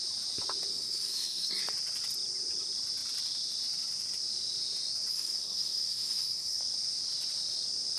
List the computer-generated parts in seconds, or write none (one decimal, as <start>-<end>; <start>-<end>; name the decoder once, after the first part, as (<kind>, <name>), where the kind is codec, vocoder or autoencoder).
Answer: 0.7-1.6 (codec, SNAC); 5.1-6.6